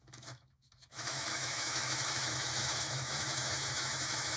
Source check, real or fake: fake